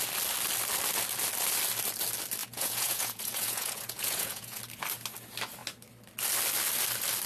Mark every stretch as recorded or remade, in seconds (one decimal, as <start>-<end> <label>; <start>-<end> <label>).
0.0-2.4 recorded; 2.4-4.6 remade; 4.6-7.3 recorded